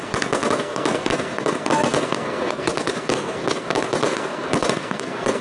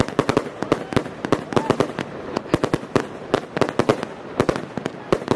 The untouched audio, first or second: second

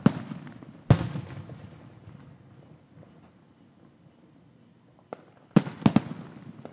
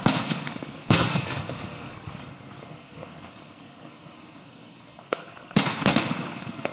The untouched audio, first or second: first